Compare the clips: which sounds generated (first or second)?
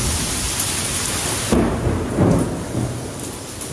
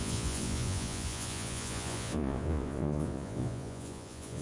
second